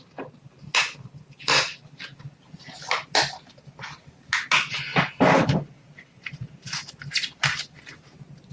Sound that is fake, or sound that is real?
real